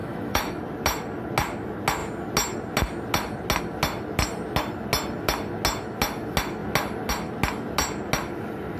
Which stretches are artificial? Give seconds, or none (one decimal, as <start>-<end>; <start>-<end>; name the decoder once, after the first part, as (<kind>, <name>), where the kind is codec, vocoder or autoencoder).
0.0-0.6 (autoencoder, DAC-VAE)